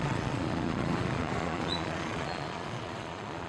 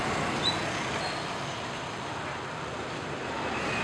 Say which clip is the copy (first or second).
first